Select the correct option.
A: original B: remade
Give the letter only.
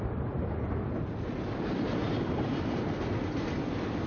A